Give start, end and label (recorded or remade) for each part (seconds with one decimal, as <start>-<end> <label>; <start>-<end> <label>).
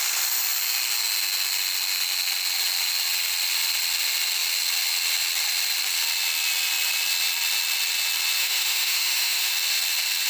0.0-8.4 recorded; 8.4-9.5 remade; 9.5-10.3 recorded